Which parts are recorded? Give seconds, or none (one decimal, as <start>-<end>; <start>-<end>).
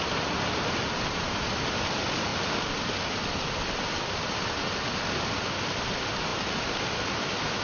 0.0-7.6